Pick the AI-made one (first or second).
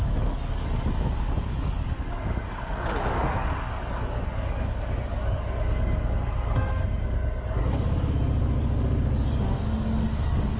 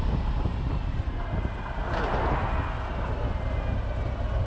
first